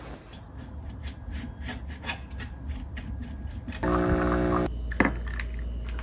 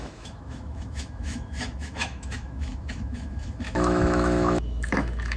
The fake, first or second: second